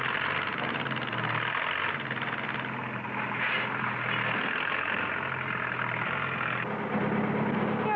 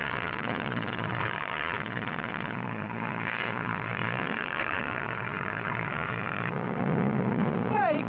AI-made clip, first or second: second